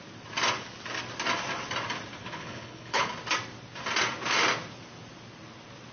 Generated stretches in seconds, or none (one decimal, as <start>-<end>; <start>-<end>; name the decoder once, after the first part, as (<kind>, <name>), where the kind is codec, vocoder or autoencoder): 2.2-3.1 (codec, HILCodec)